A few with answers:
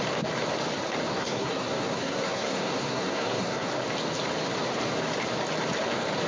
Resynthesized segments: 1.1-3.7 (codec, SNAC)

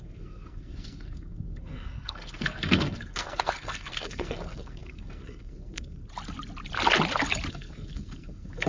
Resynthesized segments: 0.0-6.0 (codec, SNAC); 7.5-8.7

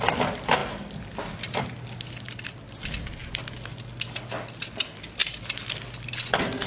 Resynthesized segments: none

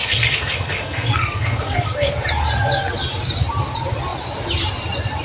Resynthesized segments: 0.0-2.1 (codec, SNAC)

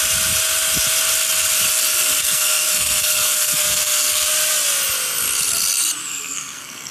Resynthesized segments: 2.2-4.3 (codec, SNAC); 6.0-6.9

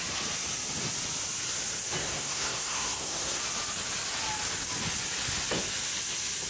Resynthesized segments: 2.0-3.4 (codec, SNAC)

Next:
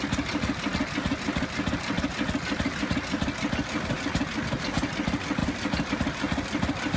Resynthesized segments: none